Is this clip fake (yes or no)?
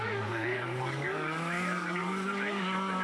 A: yes